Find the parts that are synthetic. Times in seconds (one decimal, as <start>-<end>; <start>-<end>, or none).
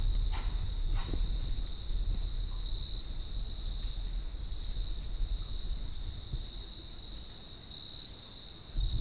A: none